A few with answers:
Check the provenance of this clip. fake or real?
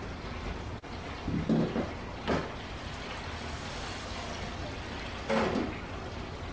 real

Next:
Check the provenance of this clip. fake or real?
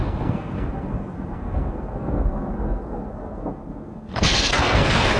fake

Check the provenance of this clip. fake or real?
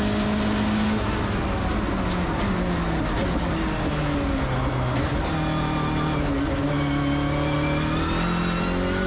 real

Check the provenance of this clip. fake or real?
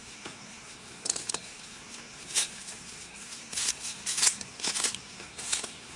fake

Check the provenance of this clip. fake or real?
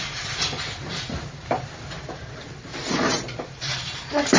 fake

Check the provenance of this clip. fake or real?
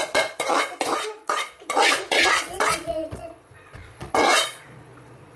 fake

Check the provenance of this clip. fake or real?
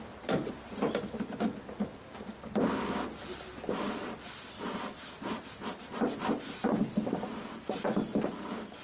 real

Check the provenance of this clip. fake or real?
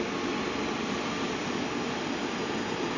real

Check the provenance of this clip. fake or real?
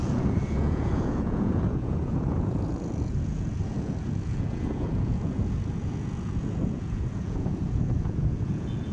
fake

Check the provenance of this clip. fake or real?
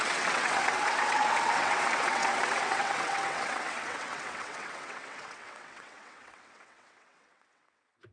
fake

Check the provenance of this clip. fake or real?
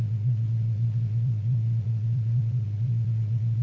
fake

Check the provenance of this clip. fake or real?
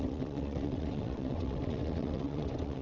fake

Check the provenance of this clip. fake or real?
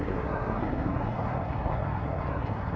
fake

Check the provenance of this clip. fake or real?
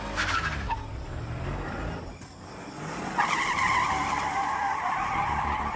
real